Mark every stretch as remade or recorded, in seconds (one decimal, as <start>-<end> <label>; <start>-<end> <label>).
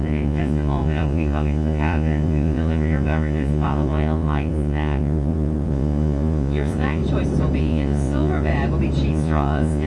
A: 0.0-7.0 remade; 7.0-7.6 recorded; 7.6-8.5 remade; 8.5-9.1 recorded; 9.1-9.9 remade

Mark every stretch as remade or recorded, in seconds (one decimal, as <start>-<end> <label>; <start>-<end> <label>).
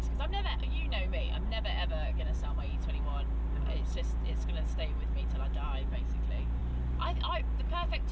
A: 0.0-2.1 recorded; 2.1-2.7 remade; 2.7-8.1 recorded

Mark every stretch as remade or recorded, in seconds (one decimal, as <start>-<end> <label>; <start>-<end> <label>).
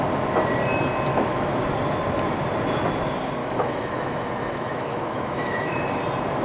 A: 0.0-1.1 recorded; 1.1-1.6 remade; 1.6-3.4 recorded; 3.4-6.0 remade; 6.0-6.4 recorded